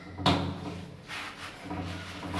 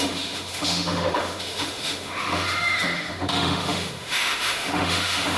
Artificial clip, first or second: second